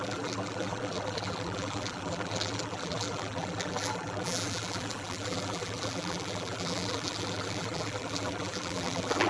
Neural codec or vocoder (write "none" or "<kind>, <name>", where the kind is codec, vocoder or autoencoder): vocoder, BigVGAN v2